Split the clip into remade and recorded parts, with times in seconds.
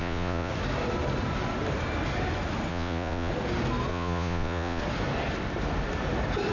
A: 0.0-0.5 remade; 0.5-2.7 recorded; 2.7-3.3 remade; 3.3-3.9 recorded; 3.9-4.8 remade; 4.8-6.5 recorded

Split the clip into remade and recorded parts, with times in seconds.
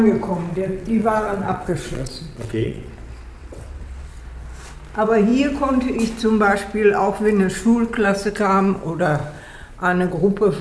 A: 0.0-0.5 recorded; 0.5-2.9 remade; 2.9-3.4 recorded; 3.4-4.1 remade; 4.1-10.6 recorded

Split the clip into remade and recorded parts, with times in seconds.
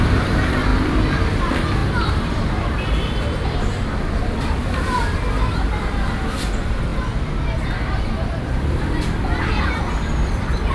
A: 0.0-0.7 remade; 0.7-1.4 recorded; 1.4-6.9 remade; 6.9-9.7 recorded; 9.7-10.7 remade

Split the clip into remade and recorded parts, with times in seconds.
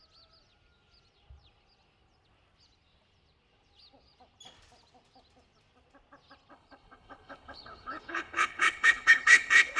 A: 0.0-6.5 recorded; 6.5-9.8 remade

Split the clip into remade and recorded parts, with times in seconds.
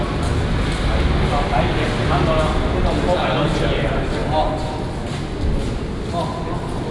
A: 0.0-6.9 recorded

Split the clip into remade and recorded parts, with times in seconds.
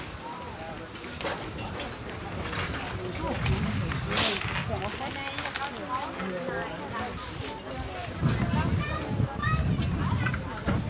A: 0.0-10.9 recorded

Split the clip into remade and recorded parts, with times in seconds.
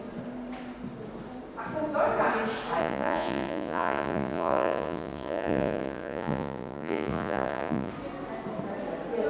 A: 0.0-2.8 recorded; 2.8-7.9 remade; 7.9-9.3 recorded